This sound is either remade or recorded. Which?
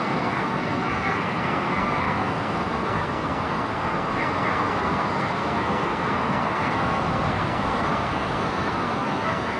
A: remade